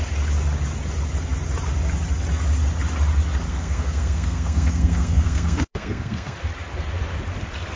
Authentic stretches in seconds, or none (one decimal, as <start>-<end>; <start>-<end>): 0.0-3.5; 6.4-7.8